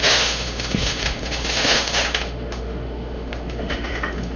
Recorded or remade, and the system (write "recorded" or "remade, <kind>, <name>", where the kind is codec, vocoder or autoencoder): remade, autoencoder, DAC-VAE